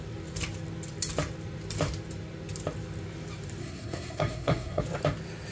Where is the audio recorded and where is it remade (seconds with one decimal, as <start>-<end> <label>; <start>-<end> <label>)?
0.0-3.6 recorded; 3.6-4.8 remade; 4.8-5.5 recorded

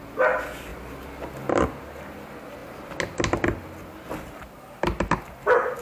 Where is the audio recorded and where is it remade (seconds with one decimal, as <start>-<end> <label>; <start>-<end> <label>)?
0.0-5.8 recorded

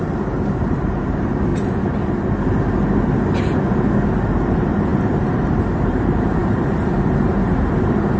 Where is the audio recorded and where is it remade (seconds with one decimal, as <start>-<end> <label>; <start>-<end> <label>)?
0.0-1.5 remade; 1.5-4.5 recorded; 4.5-8.2 remade